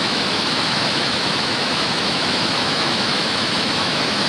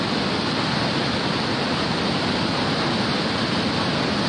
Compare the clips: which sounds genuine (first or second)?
second